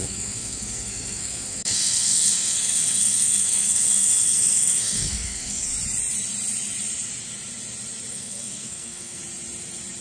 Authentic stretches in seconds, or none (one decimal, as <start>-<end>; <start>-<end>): 5.7-8.1; 9.2-10.0